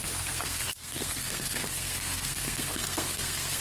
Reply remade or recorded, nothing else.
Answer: remade